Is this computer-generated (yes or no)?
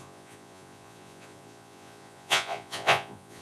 yes